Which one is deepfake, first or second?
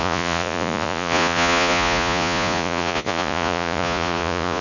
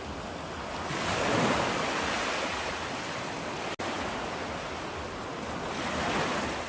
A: first